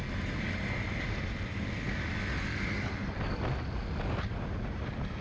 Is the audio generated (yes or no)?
no